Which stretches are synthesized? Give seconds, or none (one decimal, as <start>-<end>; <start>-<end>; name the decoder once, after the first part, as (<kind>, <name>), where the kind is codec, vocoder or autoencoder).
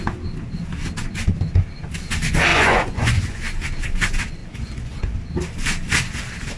2.5-3.4 (vocoder, Vocos); 4.4-5.0